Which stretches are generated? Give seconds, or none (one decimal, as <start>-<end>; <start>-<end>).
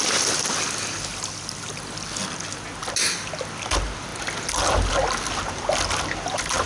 none